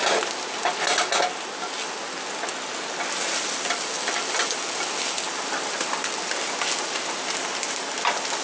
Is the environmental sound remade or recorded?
recorded